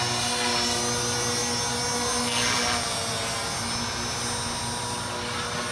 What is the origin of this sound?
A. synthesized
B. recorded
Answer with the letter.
B